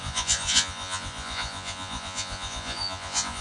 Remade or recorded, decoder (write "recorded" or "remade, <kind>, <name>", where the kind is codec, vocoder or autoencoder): remade, vocoder, Vocos